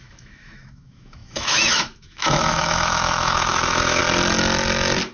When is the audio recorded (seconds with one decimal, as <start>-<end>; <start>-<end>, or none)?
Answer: 4.0-5.1